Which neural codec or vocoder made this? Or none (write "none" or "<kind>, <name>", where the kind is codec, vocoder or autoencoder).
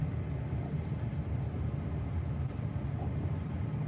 none